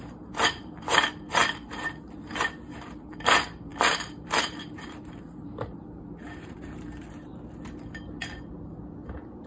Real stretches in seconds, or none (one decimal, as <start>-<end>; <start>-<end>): 7.3-9.5